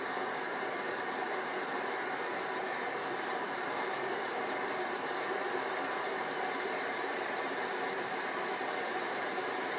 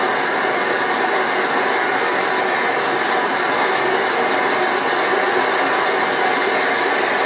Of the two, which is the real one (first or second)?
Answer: second